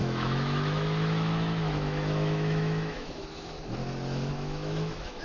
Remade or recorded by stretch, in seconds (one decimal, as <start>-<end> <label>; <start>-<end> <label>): 0.0-3.8 remade; 3.8-4.3 recorded; 4.3-5.2 remade